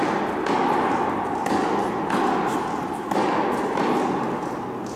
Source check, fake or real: real